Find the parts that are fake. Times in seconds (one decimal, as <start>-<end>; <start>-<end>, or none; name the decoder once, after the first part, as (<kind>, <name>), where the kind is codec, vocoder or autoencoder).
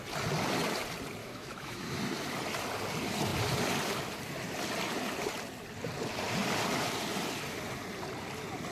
1.2-2.0 (autoencoder, DAC-VAE)